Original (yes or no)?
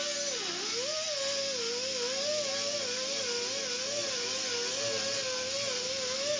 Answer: yes